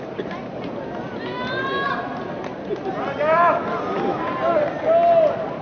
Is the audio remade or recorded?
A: recorded